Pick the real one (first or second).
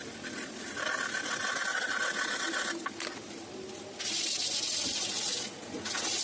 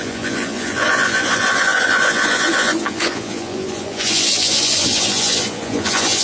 first